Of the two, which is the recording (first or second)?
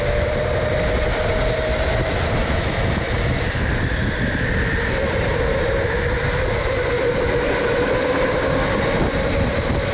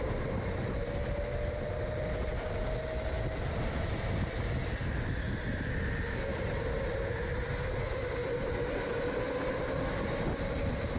second